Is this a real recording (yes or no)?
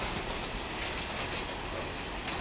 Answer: yes